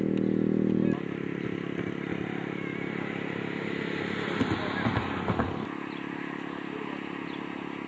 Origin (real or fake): real